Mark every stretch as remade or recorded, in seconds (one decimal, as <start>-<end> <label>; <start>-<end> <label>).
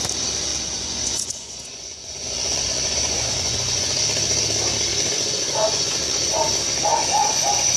0.0-0.5 recorded; 0.5-4.0 remade; 4.0-4.9 recorded; 4.9-6.4 remade; 6.4-6.9 recorded; 6.9-7.8 remade